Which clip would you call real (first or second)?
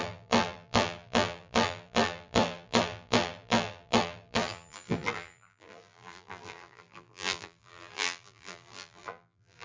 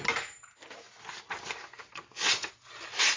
second